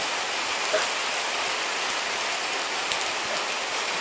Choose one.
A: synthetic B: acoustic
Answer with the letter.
B